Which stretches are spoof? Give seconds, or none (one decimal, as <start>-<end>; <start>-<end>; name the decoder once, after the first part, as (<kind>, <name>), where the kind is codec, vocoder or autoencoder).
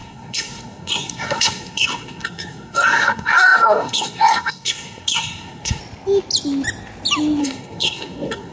0.0-5.8 (codec, SNAC); 7.4-8.5